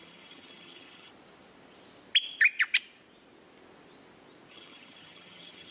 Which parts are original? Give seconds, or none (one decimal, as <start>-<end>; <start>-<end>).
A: 1.1-4.5